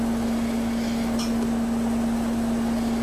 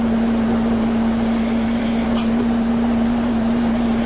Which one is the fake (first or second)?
second